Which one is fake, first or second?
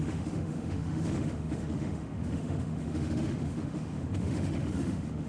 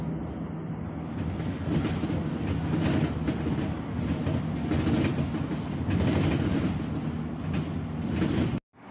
first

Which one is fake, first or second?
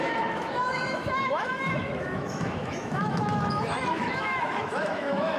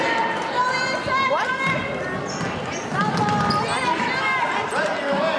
first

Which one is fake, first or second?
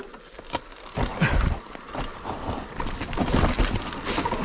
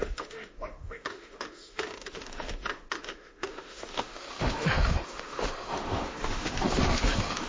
second